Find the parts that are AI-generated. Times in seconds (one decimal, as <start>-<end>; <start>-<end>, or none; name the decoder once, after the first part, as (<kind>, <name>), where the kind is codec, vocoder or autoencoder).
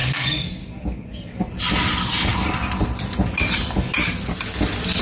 0.0-1.5 (codec, DAC)